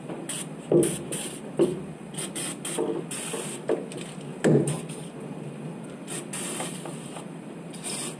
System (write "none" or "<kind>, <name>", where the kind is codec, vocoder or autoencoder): none